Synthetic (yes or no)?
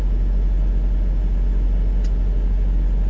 no